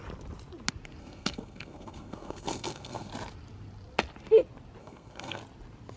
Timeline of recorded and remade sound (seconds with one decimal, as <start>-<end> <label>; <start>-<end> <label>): 0.0-1.0 recorded; 1.0-3.1 remade; 3.1-4.8 recorded; 4.8-5.4 remade; 5.4-6.0 recorded